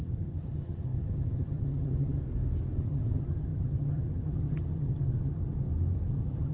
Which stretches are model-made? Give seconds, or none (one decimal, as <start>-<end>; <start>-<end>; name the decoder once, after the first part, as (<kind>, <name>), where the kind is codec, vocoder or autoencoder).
0.0-2.2 (vocoder, HiFi-GAN); 2.8-5.4; 6.1-6.5